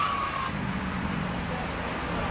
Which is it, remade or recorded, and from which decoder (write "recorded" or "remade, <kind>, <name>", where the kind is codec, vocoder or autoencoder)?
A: recorded